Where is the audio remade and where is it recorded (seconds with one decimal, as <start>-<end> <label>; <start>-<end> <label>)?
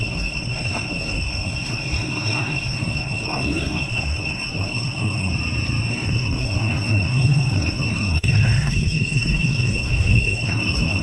0.0-5.3 remade; 5.3-5.9 recorded; 5.9-11.0 remade